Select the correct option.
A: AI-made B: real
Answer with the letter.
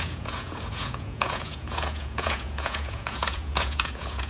A